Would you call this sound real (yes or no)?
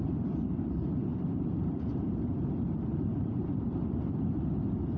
no